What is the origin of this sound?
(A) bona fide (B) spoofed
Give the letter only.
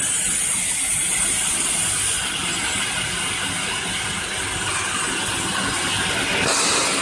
A